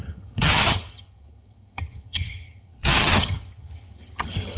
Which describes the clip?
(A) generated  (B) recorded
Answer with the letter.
A